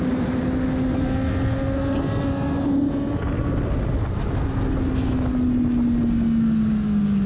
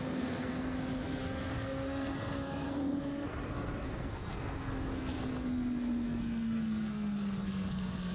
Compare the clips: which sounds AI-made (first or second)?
second